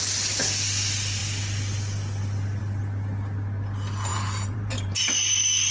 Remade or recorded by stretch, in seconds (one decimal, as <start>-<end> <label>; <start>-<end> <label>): 0.0-4.1 recorded; 4.1-5.0 remade; 5.0-5.7 recorded